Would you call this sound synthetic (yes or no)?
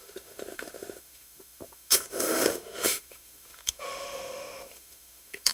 yes